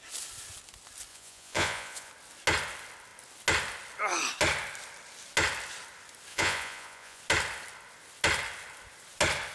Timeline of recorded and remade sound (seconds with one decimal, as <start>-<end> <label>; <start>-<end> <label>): 0.0-1.1 recorded; 1.1-2.1 remade; 2.1-6.3 recorded; 6.3-7.2 remade; 7.2-9.5 recorded